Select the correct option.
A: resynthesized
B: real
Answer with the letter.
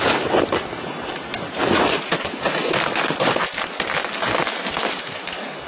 B